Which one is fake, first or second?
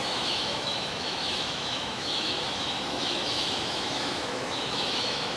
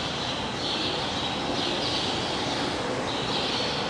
first